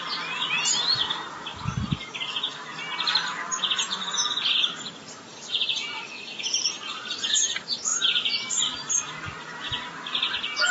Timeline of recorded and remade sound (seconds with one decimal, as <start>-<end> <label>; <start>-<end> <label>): 0.0-7.9 recorded; 7.9-8.9 remade; 8.9-10.7 recorded